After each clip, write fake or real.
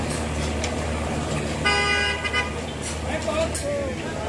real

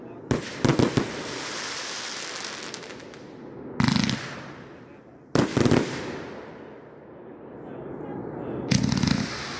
real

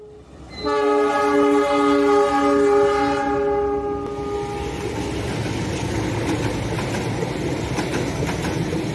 real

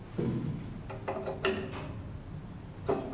real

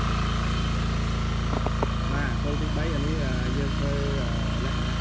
real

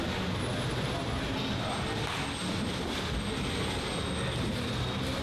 real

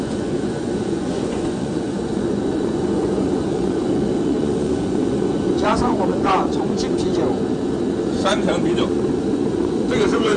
fake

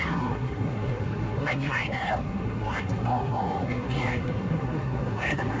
fake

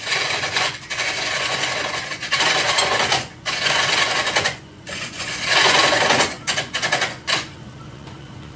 fake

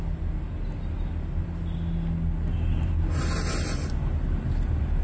real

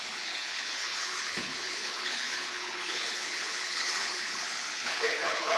fake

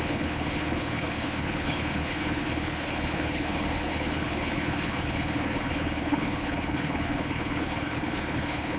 fake